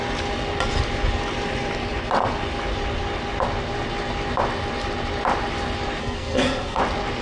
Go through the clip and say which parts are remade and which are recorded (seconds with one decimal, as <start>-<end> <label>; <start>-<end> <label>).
0.0-6.0 recorded; 6.0-6.8 remade; 6.8-7.2 recorded